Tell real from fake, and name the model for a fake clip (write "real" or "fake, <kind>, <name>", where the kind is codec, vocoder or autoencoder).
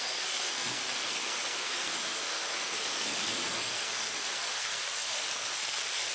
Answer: fake, codec, SNAC